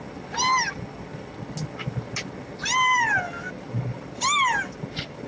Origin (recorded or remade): recorded